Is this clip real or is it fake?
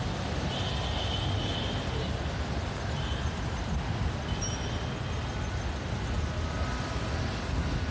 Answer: real